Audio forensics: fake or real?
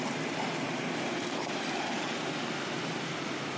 real